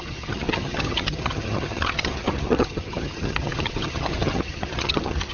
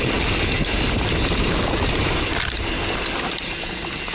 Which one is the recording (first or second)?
second